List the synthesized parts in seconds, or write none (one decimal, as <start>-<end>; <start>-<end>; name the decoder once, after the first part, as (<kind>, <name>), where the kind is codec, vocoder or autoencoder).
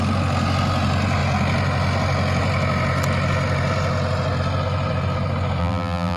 5.6-6.2 (vocoder, BigVGAN v2)